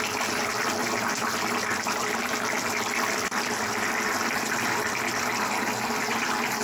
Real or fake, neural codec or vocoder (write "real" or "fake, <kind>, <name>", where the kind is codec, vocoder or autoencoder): real